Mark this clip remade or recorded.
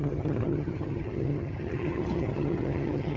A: remade